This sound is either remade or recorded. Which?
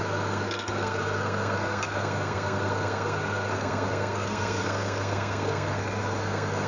remade